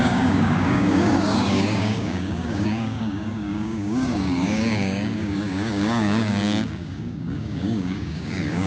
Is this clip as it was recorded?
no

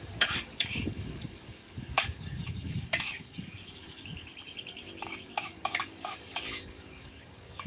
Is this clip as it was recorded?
no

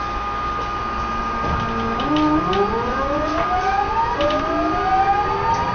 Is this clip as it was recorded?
yes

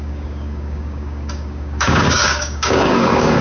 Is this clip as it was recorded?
no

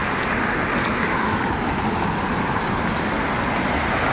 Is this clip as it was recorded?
yes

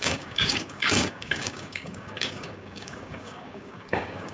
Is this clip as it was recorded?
no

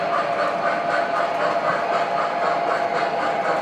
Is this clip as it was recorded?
yes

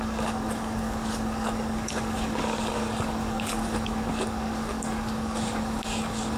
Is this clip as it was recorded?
no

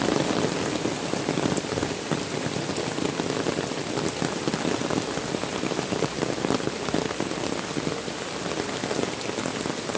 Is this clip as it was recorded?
yes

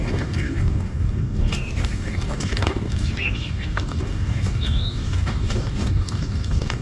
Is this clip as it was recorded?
no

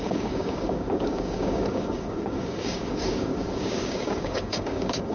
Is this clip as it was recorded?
no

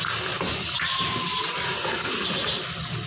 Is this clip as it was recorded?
yes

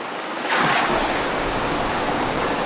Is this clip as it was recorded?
no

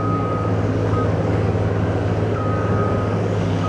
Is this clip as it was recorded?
no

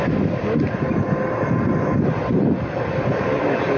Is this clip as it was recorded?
yes